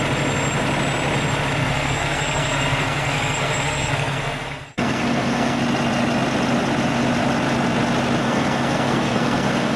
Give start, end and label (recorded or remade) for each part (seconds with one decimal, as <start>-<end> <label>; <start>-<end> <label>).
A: 0.0-1.6 recorded; 1.6-5.6 remade; 5.6-8.2 recorded; 8.2-9.8 remade